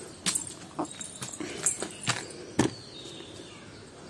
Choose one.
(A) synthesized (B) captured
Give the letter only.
B